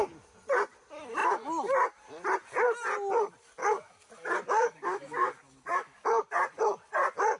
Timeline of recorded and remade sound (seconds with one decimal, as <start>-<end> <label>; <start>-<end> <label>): 0.0-3.6 recorded; 3.6-4.1 remade; 4.1-4.6 recorded; 4.6-6.2 remade; 6.2-7.4 recorded